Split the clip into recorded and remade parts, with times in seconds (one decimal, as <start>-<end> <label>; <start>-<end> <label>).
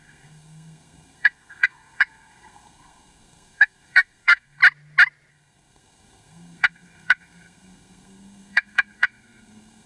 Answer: 0.0-4.6 remade; 4.6-5.3 recorded; 5.3-9.9 remade